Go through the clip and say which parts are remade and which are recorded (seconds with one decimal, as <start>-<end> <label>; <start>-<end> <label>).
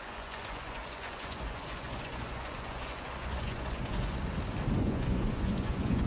0.0-4.2 remade; 4.2-4.8 recorded; 4.8-6.1 remade